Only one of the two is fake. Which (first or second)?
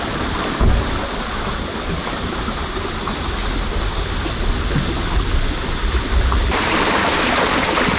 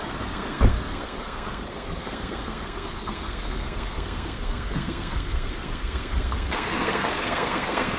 second